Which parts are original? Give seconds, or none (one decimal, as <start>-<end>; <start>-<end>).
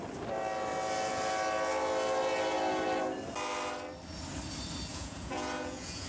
0.0-4.9